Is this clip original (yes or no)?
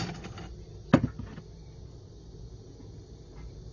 yes